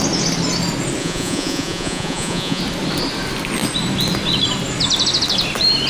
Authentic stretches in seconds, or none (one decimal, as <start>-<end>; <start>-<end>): 0.0-1.0; 2.6-5.9